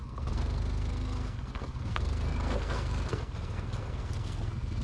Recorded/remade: remade